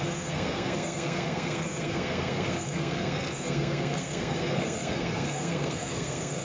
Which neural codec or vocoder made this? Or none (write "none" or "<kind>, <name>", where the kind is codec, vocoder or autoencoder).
codec, SNAC